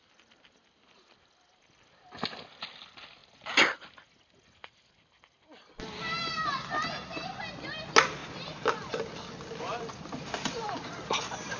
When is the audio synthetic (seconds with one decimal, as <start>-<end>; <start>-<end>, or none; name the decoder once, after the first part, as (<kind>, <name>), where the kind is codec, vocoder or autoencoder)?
none

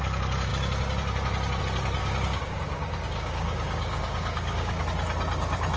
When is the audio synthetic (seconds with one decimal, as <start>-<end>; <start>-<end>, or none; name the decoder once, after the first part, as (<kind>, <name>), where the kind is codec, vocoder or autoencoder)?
2.0-4.8 (codec, DAC)